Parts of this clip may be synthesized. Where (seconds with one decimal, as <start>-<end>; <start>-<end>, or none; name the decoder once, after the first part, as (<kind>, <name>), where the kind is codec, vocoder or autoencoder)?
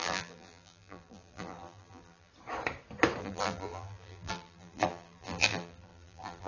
0.0-2.3 (vocoder, BigVGAN v2); 3.2-6.5